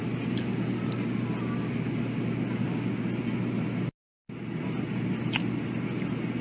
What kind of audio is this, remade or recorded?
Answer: recorded